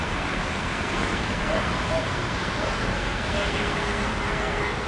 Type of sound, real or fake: fake